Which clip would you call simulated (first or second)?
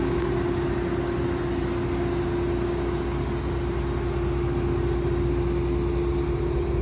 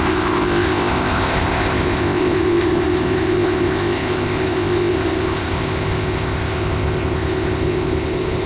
second